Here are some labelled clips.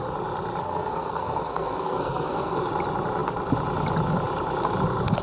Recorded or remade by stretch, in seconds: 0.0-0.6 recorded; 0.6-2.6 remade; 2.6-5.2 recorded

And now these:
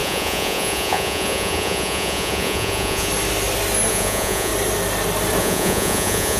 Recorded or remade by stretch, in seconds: 0.0-3.1 remade; 3.1-3.9 recorded; 3.9-4.5 remade; 4.5-5.4 recorded; 5.4-6.4 remade

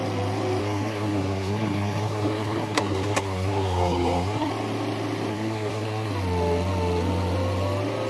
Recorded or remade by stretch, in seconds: 0.0-0.6 recorded; 0.6-4.5 remade; 4.5-5.3 recorded; 5.3-6.1 remade; 6.1-8.1 recorded

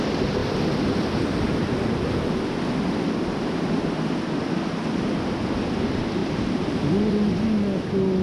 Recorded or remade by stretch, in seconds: 0.0-6.2 recorded; 6.2-6.8 remade; 6.8-8.2 recorded

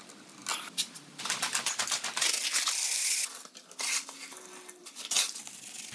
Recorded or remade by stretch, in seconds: 0.0-0.4 recorded; 0.4-1.8 remade; 1.8-4.8 recorded; 4.8-5.4 remade; 5.4-5.9 recorded

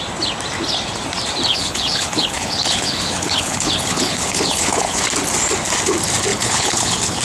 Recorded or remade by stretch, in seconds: 0.0-1.5 recorded; 1.5-5.0 remade; 5.0-6.3 recorded; 6.3-7.2 remade